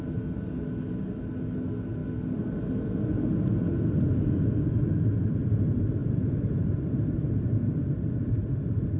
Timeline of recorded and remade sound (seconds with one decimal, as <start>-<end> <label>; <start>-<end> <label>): 0.0-6.0 recorded; 6.0-8.6 remade; 8.6-9.0 recorded